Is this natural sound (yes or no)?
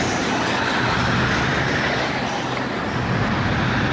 yes